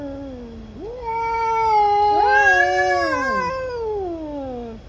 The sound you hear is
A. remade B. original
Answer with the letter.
B